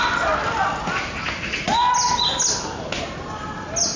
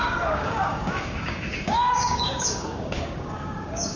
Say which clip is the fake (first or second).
second